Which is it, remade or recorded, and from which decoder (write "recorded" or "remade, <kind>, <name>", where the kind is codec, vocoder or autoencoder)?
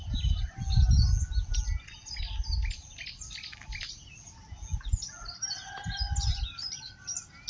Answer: recorded